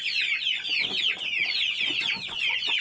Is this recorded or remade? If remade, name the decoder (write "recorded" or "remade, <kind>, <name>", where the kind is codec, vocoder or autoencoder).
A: remade, vocoder, Vocos